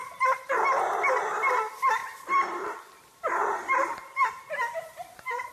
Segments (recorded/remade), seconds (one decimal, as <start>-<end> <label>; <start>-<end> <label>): 0.0-1.3 recorded; 1.3-5.5 remade